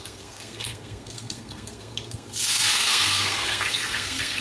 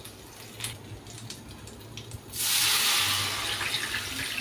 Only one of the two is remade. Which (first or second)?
first